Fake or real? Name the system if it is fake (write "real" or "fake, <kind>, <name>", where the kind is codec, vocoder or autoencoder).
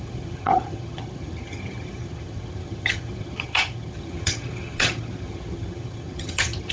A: fake, vocoder, HiFi-GAN